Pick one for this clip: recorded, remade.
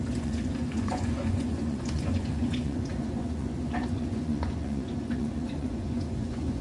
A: remade